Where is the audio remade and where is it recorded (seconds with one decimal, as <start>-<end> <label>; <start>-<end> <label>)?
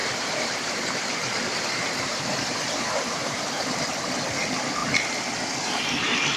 0.0-3.8 remade; 3.8-6.4 recorded